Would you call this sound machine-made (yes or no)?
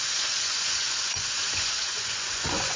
yes